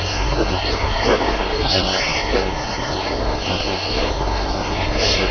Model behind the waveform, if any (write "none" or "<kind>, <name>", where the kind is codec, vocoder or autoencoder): codec, SNAC